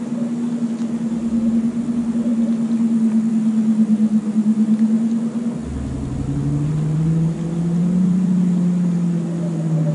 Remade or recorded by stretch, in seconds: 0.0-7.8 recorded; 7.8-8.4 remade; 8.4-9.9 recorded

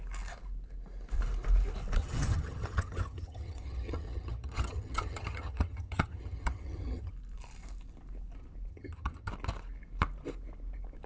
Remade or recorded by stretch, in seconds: 0.0-2.0 recorded; 2.0-7.1 remade; 7.1-8.7 recorded; 8.7-9.3 remade; 9.3-11.1 recorded

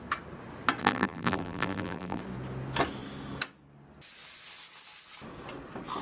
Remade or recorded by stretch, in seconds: 0.0-0.8 recorded; 0.8-2.2 remade; 2.2-6.0 recorded

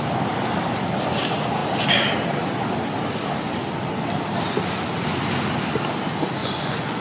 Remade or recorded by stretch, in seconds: 0.0-6.4 recorded; 6.4-7.0 remade

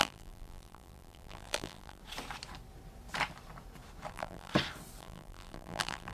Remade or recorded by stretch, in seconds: 0.0-2.0 remade; 2.0-4.1 recorded; 4.1-4.5 remade; 4.5-5.0 recorded; 5.0-6.1 remade

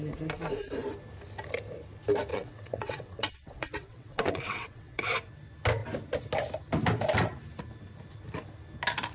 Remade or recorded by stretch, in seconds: 0.0-2.3 recorded; 2.3-5.1 remade; 5.1-9.1 recorded